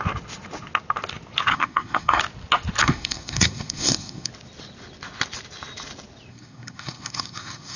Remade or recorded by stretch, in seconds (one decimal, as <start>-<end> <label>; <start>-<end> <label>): 0.0-1.5 recorded; 1.5-2.2 remade; 2.2-2.8 recorded; 2.8-4.3 remade; 4.3-6.3 recorded; 6.3-7.8 remade